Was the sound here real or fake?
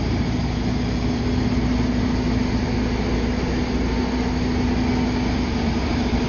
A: real